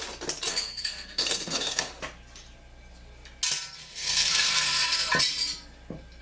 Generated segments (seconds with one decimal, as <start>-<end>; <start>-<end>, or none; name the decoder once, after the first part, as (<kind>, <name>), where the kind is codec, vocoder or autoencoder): 0.5-1.9 (codec, SNAC); 3.8-5.1